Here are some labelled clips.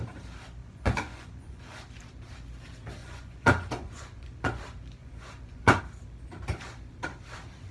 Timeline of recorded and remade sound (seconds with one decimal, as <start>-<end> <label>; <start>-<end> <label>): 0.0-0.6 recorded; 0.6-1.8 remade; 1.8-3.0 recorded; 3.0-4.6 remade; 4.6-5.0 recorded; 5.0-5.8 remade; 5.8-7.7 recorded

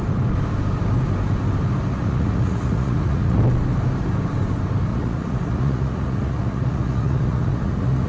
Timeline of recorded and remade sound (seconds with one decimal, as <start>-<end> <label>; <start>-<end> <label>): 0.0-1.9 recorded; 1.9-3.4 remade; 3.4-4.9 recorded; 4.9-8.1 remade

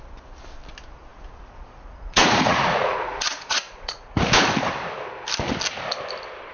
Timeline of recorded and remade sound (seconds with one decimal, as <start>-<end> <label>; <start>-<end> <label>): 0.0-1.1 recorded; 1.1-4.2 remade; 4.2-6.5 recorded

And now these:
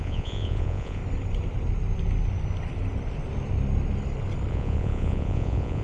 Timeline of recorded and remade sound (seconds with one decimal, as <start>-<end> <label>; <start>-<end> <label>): 0.0-1.0 remade; 1.0-4.5 recorded; 4.5-5.8 remade

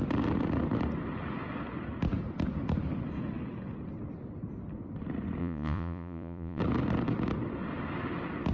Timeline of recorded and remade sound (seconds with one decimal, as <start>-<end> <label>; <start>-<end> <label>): 0.0-5.4 recorded; 5.4-6.6 remade; 6.6-8.5 recorded